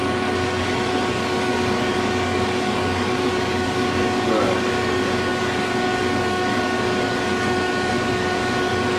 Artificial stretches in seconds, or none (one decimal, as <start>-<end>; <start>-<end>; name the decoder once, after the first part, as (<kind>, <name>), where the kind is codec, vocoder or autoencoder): 0.0-9.0 (codec, DAC)